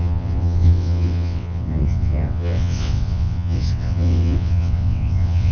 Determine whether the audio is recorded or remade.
remade